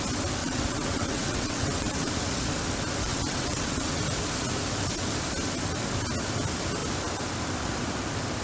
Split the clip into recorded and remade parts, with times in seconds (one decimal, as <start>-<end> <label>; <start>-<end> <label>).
0.0-0.4 recorded; 0.4-2.1 remade; 2.1-3.1 recorded; 3.1-4.0 remade; 4.0-8.4 recorded